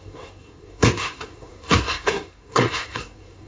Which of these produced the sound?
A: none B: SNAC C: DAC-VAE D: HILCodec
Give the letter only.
B